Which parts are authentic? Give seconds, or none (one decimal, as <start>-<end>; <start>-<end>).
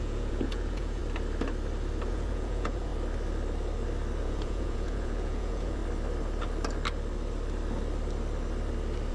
1.0-2.1; 2.9-4.2; 5.8-9.1